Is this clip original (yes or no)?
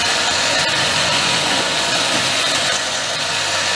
no